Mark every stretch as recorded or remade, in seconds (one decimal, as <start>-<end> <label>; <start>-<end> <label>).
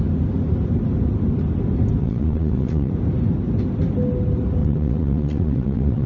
0.0-2.0 recorded; 2.0-2.9 remade; 2.9-4.6 recorded; 4.6-6.1 remade